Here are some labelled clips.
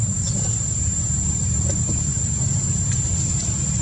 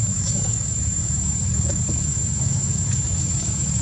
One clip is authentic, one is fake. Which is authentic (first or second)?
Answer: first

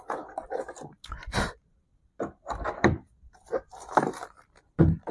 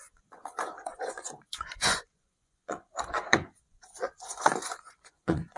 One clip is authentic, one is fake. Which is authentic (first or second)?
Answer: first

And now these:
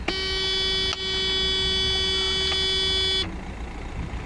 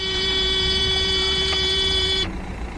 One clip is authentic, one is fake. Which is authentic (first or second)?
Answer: first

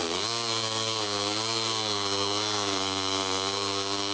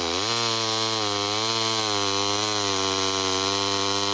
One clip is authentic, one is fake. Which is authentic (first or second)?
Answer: second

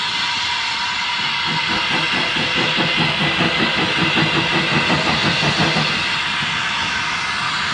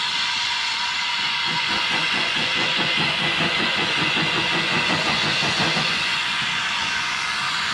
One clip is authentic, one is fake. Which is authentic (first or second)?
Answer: first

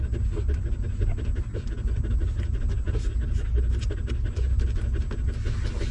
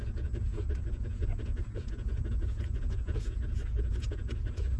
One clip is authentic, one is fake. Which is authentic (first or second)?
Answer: first